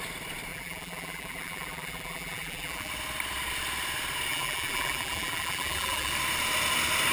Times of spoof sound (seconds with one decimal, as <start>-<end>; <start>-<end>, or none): 0.5-2.9; 4.3-6.1